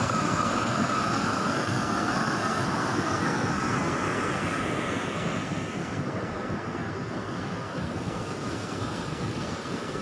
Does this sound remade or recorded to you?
remade